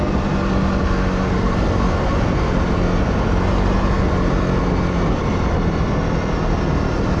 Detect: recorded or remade recorded